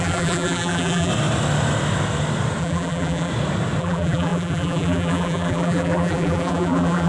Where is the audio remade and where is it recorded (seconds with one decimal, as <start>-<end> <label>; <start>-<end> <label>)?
0.0-1.1 remade; 1.1-2.6 recorded; 2.6-3.3 remade; 3.3-3.8 recorded; 3.8-7.1 remade